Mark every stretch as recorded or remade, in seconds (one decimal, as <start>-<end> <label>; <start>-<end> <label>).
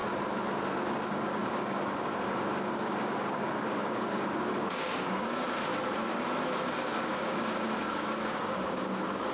0.0-1.1 recorded; 1.1-5.7 remade; 5.7-7.0 recorded; 7.0-9.3 remade